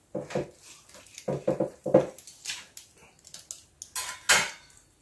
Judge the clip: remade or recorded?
recorded